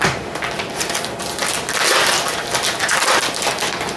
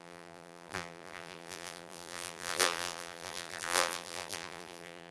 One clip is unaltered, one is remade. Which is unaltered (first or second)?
first